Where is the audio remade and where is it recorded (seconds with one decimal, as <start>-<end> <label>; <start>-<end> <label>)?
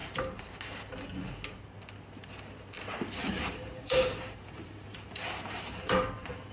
0.0-0.5 remade; 0.5-3.2 recorded; 3.2-6.0 remade; 6.0-6.5 recorded